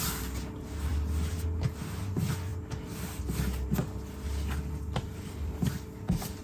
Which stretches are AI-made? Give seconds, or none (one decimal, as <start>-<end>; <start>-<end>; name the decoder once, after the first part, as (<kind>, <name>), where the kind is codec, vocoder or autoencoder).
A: none